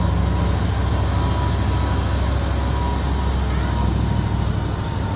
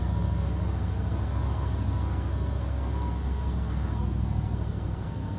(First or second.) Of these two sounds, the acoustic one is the first